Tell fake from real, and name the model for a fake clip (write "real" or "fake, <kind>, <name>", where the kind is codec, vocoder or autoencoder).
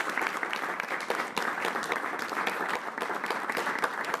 fake, vocoder, BigVGAN v2